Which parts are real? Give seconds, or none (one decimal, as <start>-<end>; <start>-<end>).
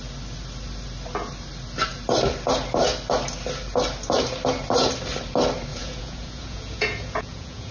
0.0-5.7